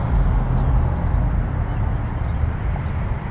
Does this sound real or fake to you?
real